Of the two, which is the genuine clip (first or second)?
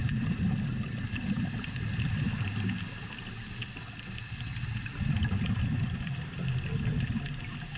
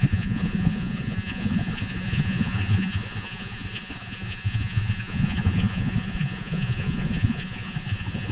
first